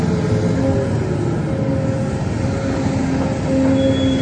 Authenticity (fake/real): real